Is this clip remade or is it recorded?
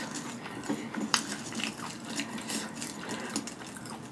recorded